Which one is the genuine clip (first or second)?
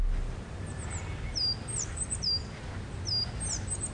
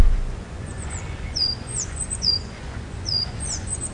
first